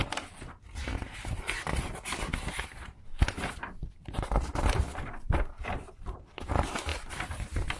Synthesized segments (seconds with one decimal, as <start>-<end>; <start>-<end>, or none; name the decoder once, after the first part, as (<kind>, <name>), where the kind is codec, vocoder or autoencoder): none